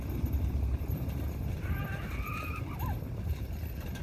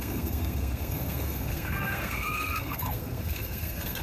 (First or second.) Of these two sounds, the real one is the first